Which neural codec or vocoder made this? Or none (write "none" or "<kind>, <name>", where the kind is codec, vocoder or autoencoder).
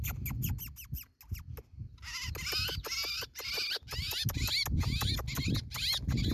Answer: none